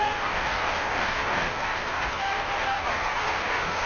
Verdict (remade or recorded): remade